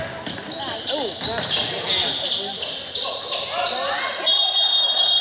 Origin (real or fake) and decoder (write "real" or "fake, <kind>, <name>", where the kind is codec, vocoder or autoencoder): real